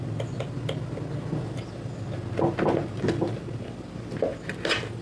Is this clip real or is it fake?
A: real